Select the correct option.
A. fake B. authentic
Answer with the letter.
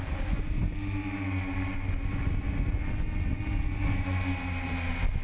B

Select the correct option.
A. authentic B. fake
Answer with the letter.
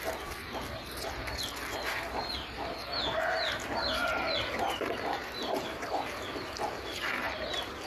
A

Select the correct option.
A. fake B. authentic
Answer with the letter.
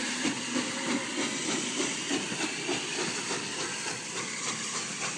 B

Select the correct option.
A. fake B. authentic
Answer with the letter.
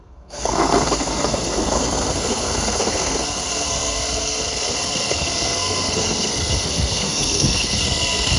A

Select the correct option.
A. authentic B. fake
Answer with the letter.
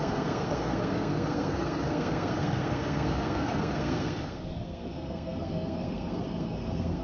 B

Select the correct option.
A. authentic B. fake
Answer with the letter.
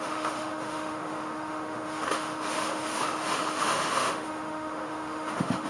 B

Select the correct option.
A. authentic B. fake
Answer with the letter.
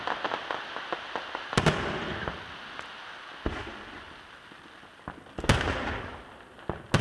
A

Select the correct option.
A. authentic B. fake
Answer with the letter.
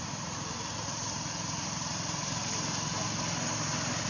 B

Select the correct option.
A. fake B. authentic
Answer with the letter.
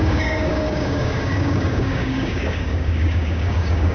A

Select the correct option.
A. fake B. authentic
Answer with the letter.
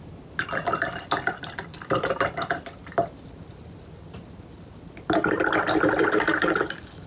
B